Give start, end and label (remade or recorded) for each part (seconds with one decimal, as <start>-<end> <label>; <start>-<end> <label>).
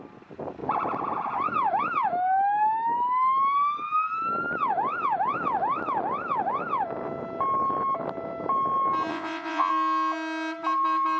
0.0-9.1 recorded; 9.1-9.7 remade; 9.7-11.2 recorded